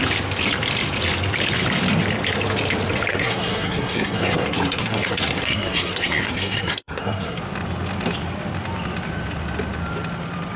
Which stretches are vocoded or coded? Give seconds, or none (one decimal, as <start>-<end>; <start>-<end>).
3.1-7.4